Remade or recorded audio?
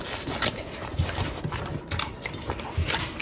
recorded